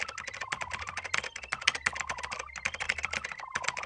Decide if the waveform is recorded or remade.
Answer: recorded